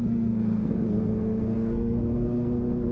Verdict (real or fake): fake